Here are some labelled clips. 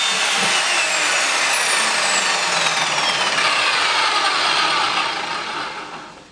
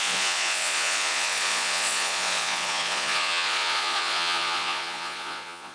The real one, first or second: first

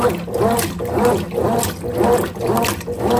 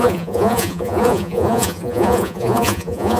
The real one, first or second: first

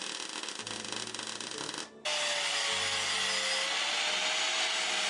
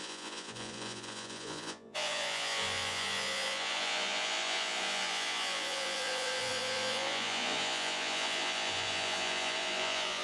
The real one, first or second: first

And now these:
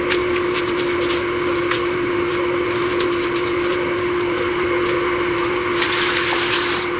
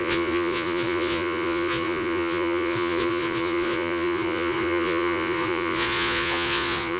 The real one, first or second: first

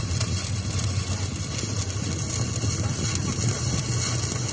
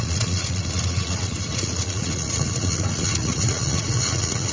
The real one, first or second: first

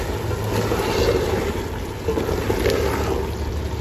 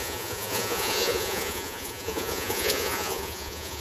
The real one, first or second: first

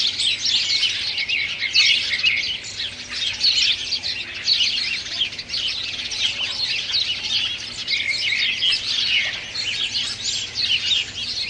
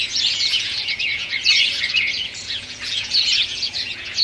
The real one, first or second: first